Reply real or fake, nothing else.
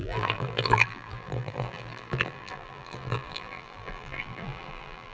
fake